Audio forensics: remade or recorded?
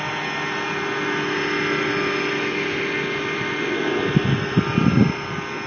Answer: recorded